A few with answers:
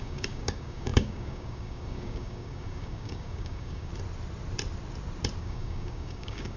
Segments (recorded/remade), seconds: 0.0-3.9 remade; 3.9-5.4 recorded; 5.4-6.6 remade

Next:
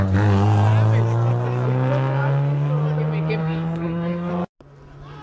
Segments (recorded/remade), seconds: 0.0-3.4 recorded; 3.4-4.3 remade; 4.3-5.2 recorded

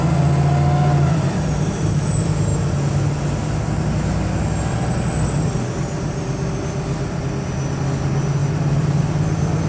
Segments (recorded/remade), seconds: 0.0-9.7 recorded

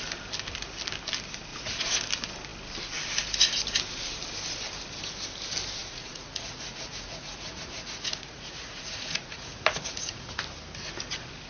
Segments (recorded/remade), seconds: 0.0-1.5 recorded; 1.5-2.0 remade; 2.0-5.8 recorded; 5.8-10.4 remade; 10.4-11.5 recorded

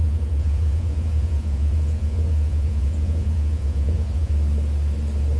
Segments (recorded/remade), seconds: 0.0-4.3 remade; 4.3-5.4 recorded

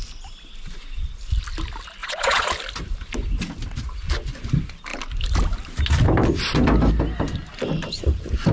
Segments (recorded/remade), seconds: 0.0-2.0 recorded; 2.0-2.5 remade; 2.5-8.5 recorded

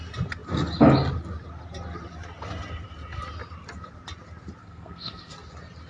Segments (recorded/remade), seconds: 0.0-4.6 recorded; 4.6-5.3 remade; 5.3-5.9 recorded